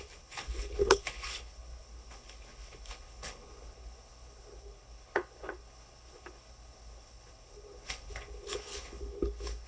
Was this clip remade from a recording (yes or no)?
yes